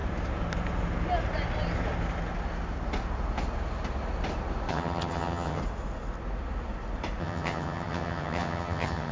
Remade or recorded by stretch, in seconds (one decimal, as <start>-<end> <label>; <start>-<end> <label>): 0.0-4.7 recorded; 4.7-5.6 remade; 5.6-7.2 recorded; 7.2-9.1 remade